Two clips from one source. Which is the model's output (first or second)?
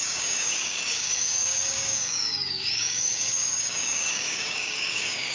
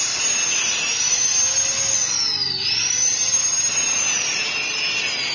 first